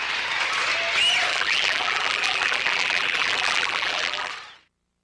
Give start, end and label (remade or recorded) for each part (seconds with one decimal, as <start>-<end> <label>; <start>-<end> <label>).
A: 0.0-1.3 recorded; 1.3-4.3 remade; 4.3-5.0 recorded